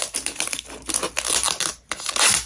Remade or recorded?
recorded